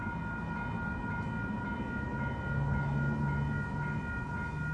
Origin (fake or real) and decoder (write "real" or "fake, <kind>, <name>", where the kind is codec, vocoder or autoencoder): real